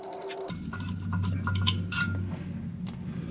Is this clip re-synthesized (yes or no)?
no